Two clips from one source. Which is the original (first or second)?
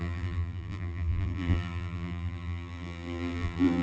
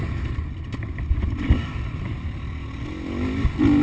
second